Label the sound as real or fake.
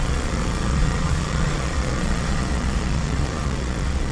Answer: fake